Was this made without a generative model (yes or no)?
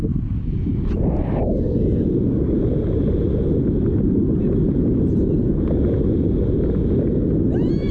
yes